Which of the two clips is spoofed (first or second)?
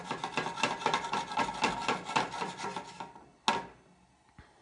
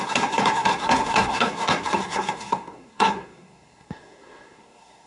second